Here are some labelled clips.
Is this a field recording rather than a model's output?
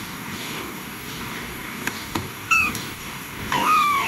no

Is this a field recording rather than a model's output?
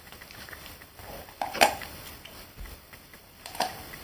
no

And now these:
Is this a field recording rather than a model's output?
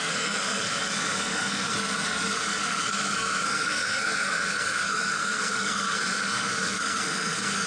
no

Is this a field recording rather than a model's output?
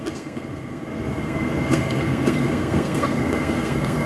no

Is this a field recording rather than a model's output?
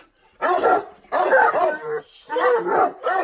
no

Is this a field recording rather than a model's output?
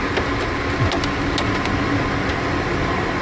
yes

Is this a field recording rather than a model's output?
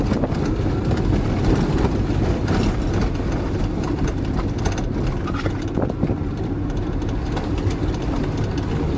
yes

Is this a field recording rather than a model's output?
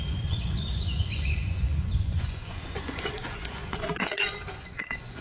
no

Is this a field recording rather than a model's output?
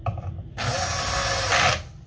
yes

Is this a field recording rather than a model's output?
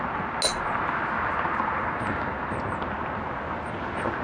yes